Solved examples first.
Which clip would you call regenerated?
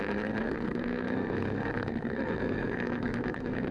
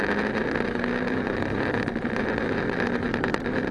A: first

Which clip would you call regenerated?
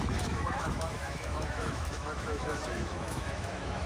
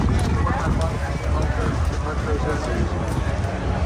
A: first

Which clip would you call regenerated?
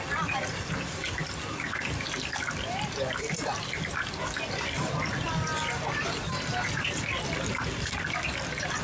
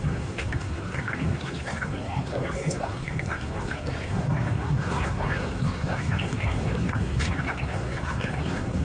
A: second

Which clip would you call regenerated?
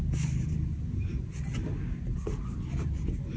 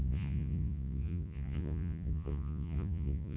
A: second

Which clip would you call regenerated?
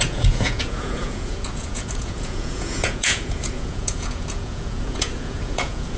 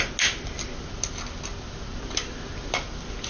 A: first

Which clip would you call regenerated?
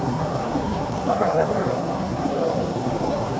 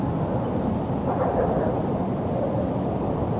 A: first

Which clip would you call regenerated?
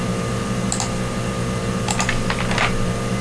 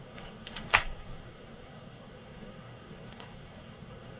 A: second